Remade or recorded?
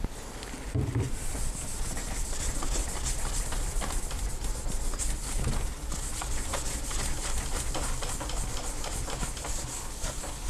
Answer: recorded